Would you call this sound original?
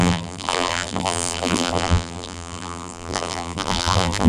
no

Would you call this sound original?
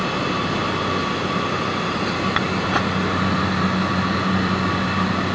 yes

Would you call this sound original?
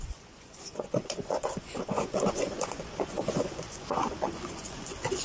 no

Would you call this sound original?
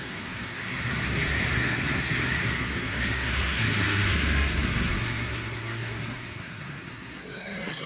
no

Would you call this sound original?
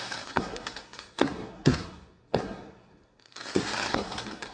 no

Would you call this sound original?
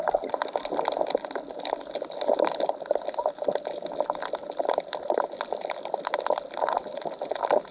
yes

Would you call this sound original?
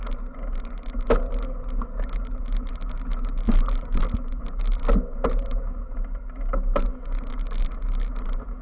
yes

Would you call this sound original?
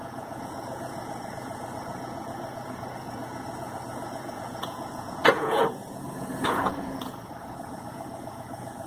no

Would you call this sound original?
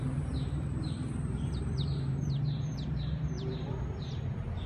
no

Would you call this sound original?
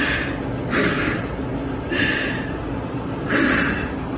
yes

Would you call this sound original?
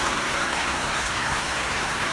no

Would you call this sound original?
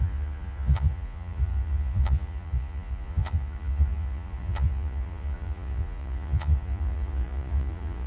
no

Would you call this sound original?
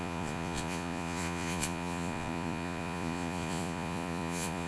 no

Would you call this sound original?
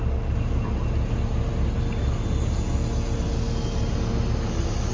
yes